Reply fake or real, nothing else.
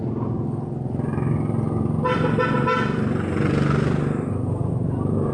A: real